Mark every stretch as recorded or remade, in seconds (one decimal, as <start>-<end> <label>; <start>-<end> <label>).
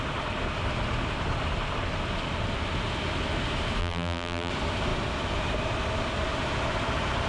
0.0-3.8 recorded; 3.8-4.5 remade; 4.5-7.3 recorded